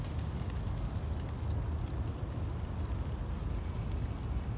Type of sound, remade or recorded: recorded